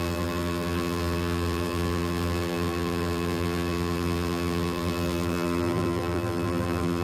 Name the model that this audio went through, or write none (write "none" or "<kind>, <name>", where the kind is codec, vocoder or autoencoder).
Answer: vocoder, BigVGAN v2